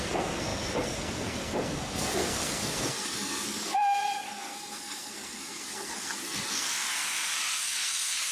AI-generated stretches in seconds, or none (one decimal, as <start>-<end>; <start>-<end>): 0.0-8.3